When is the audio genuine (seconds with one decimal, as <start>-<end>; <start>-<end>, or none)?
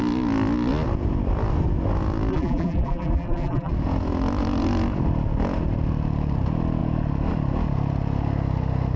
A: 0.0-2.3; 3.7-9.0